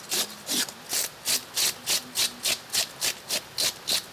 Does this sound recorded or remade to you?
recorded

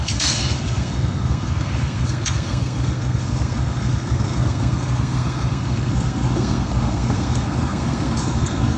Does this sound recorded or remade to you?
remade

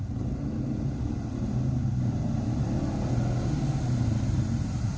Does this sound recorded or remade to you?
recorded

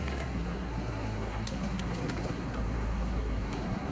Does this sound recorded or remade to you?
remade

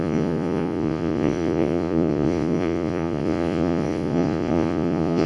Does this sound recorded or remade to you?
remade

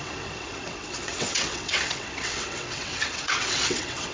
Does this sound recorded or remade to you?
remade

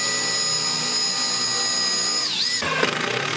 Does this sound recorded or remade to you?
recorded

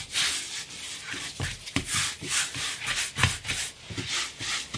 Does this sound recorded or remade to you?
recorded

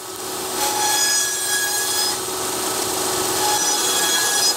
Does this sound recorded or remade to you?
recorded